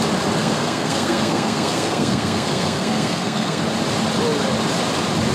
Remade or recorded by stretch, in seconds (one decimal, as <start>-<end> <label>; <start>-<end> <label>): 0.0-0.4 recorded; 0.4-3.6 remade; 3.6-5.3 recorded